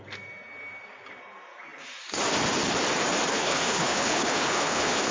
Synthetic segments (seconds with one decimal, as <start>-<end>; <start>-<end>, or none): 3.3-5.1